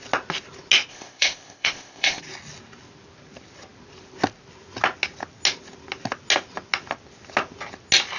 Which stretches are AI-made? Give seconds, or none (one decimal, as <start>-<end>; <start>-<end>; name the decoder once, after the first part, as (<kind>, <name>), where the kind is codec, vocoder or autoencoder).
0.9-2.2 (codec, ZipCodec)